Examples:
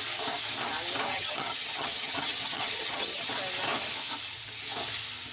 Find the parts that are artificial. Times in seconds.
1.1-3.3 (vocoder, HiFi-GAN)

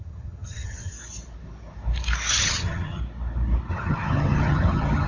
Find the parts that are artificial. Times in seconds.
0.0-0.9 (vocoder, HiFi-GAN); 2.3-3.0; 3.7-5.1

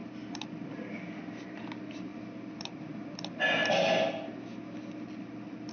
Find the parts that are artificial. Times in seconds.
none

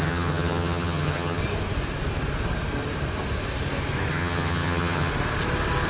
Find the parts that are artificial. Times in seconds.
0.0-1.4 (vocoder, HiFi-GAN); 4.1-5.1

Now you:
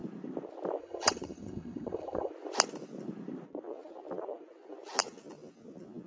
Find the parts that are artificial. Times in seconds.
0.8-2.3 (vocoder, HiFi-GAN)